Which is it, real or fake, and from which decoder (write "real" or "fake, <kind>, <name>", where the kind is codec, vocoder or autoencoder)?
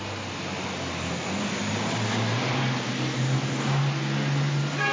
real